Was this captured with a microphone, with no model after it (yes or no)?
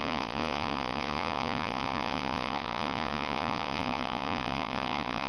no